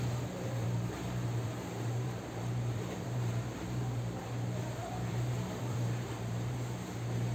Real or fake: fake